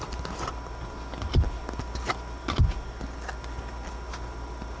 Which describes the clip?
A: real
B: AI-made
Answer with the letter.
A